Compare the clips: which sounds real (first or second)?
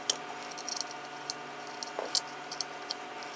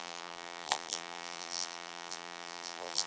first